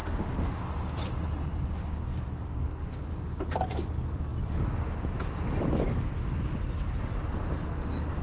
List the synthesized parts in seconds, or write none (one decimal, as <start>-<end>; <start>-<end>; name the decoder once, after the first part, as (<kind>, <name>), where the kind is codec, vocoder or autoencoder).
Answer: 0.0-0.5 (codec, DAC); 1.9-3.4